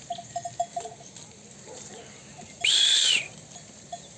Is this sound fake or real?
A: real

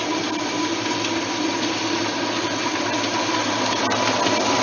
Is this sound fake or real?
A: real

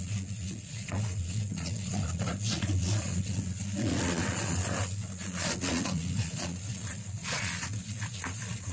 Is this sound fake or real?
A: fake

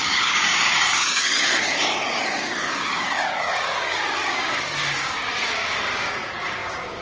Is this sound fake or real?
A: fake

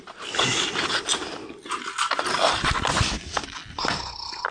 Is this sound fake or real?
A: real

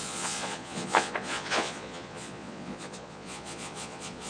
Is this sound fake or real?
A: fake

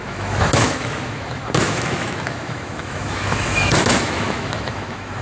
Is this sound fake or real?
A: fake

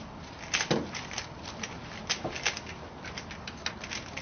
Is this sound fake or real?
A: real